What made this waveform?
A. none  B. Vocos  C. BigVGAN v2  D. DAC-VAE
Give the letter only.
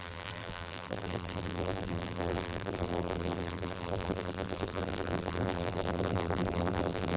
C